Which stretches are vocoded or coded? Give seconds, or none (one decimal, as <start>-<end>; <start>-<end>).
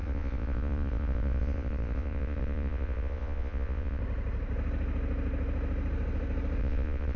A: 0.0-4.0; 6.6-7.2